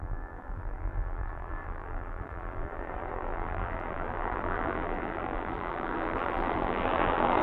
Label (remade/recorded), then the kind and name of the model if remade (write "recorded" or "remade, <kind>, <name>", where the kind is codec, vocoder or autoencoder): remade, vocoder, BigVGAN v2